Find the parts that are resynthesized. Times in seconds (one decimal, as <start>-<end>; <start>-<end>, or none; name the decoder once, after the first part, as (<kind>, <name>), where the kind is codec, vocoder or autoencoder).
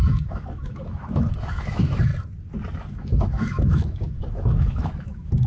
0.0-2.1 (autoencoder, DAC-VAE); 2.9-5.5